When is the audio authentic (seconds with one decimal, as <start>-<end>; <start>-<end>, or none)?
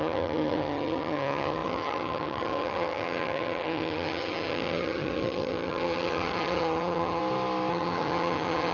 7.2-7.7